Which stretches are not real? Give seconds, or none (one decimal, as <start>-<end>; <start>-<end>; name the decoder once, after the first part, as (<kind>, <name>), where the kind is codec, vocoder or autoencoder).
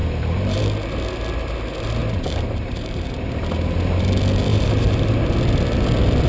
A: 0.0-0.6 (vocoder, BigVGAN v2); 2.0-3.1; 4.5-5.3